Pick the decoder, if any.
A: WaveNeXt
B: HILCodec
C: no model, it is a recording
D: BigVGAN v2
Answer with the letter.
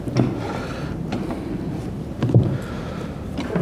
C